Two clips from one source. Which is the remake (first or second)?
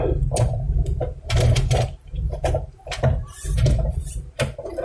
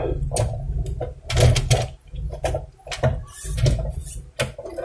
first